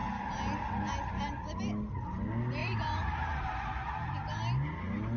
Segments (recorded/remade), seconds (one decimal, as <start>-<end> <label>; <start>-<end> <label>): 0.0-2.6 recorded; 2.6-3.4 remade; 3.4-5.2 recorded

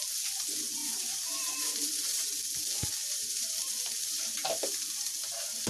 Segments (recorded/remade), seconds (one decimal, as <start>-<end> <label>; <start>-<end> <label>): 0.0-0.8 recorded; 0.8-2.4 remade; 2.4-3.0 recorded; 3.0-5.7 remade

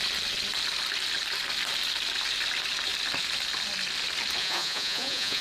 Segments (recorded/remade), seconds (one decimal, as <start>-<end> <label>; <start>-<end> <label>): 0.0-4.4 recorded; 4.4-5.4 remade

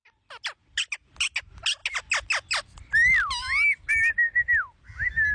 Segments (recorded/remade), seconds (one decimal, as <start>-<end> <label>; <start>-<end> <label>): 0.0-5.3 recorded